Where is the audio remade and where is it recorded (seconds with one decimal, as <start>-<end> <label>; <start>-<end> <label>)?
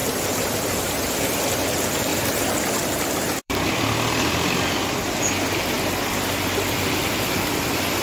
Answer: 0.0-1.5 recorded; 1.5-8.0 remade